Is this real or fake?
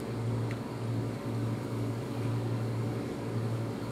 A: fake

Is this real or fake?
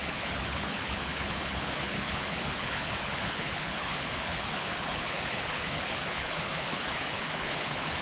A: fake